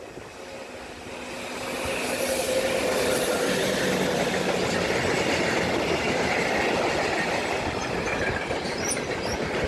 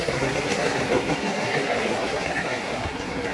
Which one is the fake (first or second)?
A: second